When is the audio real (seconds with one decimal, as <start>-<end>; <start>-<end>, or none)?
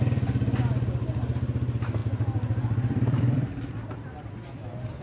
0.0-2.0; 4.5-5.0